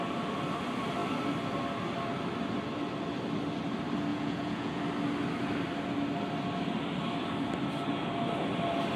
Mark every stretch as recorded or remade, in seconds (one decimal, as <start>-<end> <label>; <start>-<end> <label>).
0.0-4.1 recorded; 4.1-4.8 remade; 4.8-9.0 recorded